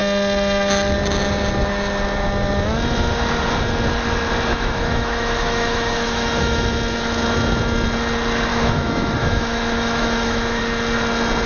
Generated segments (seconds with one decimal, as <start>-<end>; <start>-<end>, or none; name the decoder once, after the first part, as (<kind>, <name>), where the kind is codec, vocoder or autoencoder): 4.5-6.7 (autoencoder, DAC-VAE); 8.5-10.6